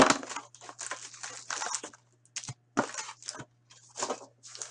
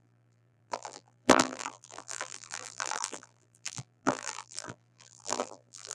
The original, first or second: first